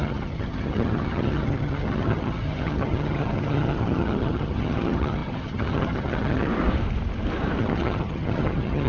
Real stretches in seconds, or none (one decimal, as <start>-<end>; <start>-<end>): 6.5-7.6